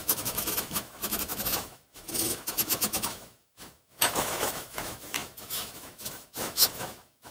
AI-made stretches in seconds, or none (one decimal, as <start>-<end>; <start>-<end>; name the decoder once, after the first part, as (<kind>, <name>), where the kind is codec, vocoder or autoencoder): 0.0-7.3 (autoencoder, DAC-VAE)